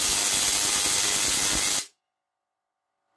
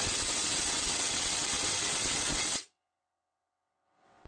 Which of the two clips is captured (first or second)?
first